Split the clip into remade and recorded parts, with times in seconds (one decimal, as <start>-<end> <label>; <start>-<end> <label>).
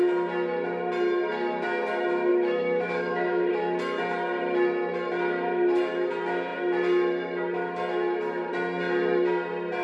0.0-2.3 recorded; 2.3-3.5 remade; 3.5-9.8 recorded